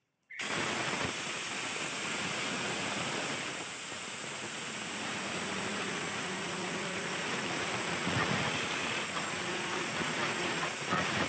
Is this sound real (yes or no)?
no